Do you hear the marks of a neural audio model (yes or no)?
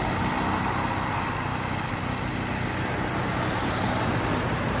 no